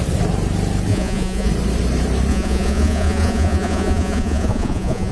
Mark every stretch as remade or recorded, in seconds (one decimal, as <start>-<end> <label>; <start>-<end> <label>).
0.0-0.9 recorded; 0.9-1.5 remade; 1.5-2.3 recorded; 2.3-5.1 remade